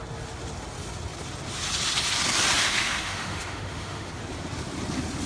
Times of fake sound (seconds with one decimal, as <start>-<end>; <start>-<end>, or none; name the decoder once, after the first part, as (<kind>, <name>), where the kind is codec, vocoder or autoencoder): 2.6-4.1 (autoencoder, DAC-VAE)